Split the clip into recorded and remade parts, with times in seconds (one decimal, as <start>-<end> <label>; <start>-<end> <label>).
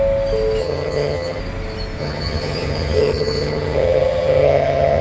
0.0-0.6 recorded; 0.6-1.4 remade; 1.4-2.0 recorded; 2.0-5.0 remade